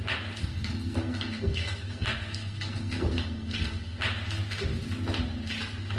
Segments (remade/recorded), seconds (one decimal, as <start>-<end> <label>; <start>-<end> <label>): 0.0-0.4 recorded; 0.4-4.0 remade; 4.0-6.0 recorded

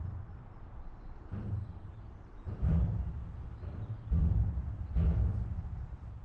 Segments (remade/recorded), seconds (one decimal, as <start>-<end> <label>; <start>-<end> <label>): 0.0-3.1 remade; 3.1-6.2 recorded

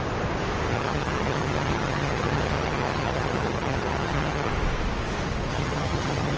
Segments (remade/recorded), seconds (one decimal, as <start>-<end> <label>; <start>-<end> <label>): 0.0-0.7 recorded; 0.7-4.5 remade; 4.5-5.5 recorded; 5.5-6.4 remade

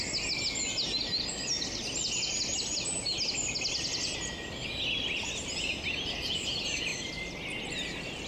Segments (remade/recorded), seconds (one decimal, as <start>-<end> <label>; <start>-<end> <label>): 0.0-8.3 recorded

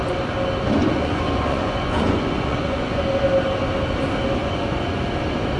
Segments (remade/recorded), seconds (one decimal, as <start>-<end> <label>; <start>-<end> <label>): 0.0-0.8 recorded; 0.8-3.0 remade; 3.0-4.4 recorded; 4.4-5.0 remade; 5.0-5.6 recorded